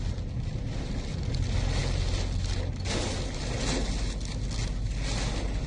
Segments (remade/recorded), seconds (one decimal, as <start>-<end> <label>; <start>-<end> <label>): 0.0-5.7 recorded